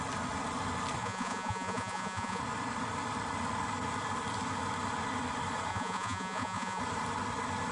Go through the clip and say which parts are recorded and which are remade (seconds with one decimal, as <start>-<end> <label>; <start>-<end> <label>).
0.0-1.0 recorded; 1.0-2.4 remade; 2.4-5.7 recorded; 5.7-6.8 remade; 6.8-7.7 recorded